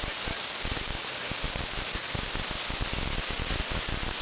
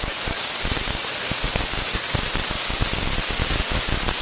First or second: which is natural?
first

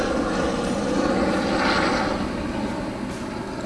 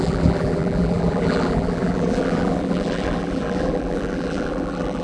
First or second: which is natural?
first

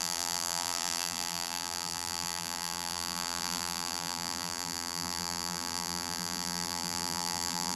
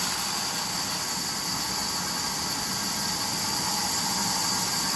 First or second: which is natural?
second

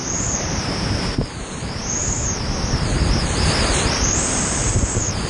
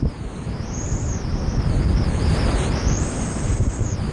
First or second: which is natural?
second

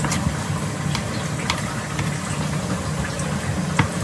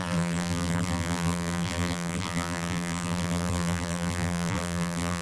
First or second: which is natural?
first